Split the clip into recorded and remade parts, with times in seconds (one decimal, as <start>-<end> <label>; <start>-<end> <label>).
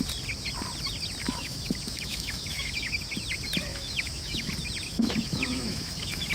0.0-1.2 recorded; 1.2-2.9 remade; 2.9-3.7 recorded; 3.7-4.5 remade; 4.5-4.9 recorded; 4.9-6.3 remade